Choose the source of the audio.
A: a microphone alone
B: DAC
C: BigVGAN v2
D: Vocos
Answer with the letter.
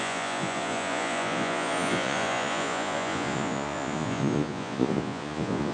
D